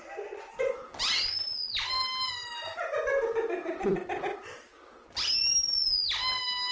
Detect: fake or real real